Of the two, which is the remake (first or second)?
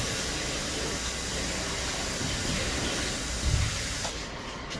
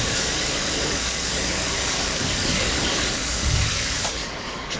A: second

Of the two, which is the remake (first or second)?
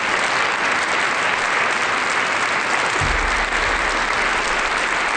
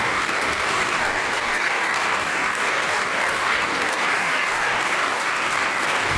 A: second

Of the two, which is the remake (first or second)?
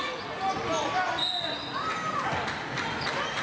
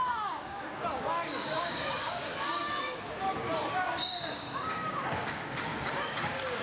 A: second